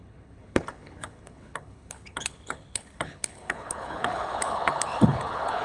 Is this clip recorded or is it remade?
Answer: remade